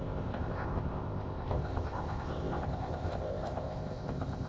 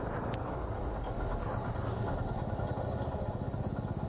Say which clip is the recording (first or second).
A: second